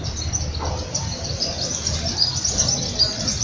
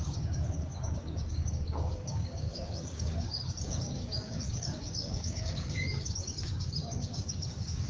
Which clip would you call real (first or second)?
first